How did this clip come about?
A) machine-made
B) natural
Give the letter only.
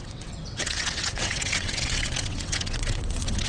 A